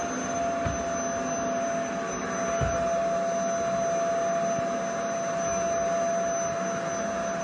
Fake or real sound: real